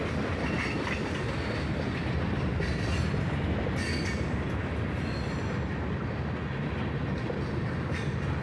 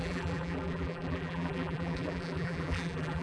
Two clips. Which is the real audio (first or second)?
first